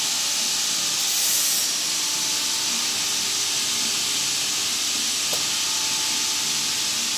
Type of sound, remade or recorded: recorded